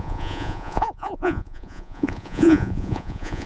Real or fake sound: fake